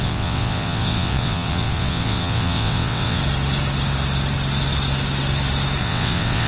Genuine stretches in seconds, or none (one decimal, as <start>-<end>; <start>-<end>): 3.2-5.8